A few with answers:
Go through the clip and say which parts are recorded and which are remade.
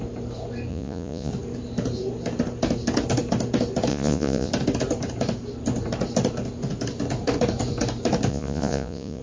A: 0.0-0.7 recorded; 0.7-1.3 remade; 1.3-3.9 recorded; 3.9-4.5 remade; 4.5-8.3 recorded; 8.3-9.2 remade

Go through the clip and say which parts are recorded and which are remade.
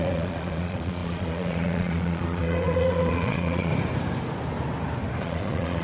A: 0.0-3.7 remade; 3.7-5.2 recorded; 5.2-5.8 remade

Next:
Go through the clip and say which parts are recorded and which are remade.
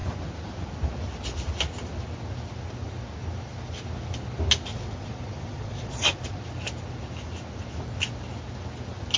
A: 0.0-4.7 recorded; 4.7-6.4 remade; 6.4-9.2 recorded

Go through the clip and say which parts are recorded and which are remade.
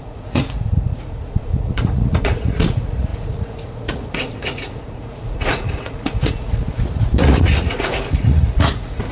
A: 0.0-9.1 remade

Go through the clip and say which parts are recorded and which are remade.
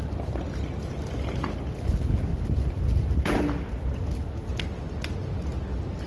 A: 0.0-6.1 recorded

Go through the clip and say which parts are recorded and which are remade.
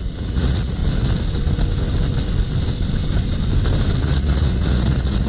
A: 0.0-0.8 remade; 0.8-4.0 recorded; 4.0-5.3 remade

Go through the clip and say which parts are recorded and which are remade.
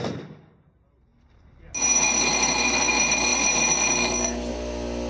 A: 0.0-5.1 recorded